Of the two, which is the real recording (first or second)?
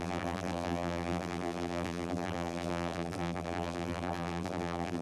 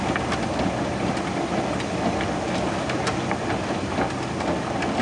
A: second